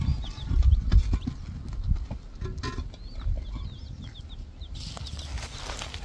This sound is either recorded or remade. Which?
recorded